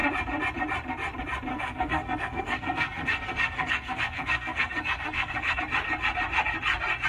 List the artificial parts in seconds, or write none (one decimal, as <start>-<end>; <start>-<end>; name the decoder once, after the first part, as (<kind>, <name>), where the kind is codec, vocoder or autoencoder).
1.5-5.6 (codec, SNAC)